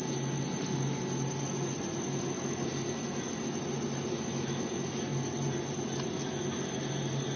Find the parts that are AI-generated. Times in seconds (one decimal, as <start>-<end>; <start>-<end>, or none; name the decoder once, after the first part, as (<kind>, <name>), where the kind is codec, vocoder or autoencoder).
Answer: none